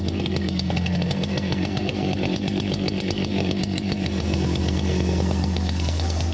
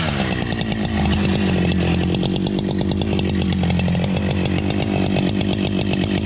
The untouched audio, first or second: second